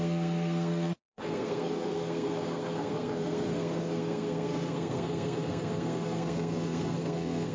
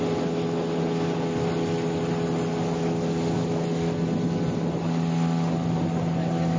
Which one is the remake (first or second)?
first